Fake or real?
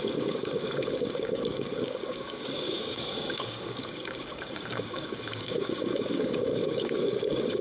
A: fake